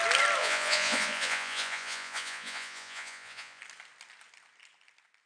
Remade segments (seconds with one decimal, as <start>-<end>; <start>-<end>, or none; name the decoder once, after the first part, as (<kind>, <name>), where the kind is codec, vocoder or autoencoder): 0.4-3.6 (vocoder, Vocos)